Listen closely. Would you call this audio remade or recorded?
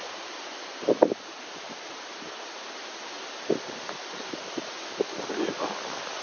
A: recorded